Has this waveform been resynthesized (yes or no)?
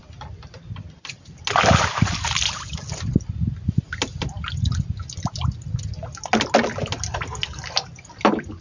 no